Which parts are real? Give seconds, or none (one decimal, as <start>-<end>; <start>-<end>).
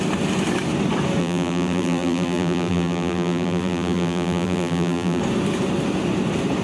0.0-1.2; 5.2-6.6